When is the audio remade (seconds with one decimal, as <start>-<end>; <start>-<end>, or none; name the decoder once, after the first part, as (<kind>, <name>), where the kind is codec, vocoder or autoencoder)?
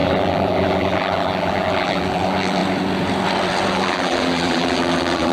0.0-2.6 (vocoder, BigVGAN v2); 3.7-5.3